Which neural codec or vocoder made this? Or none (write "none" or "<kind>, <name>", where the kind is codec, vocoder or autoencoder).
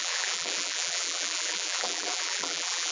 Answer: vocoder, BigVGAN v2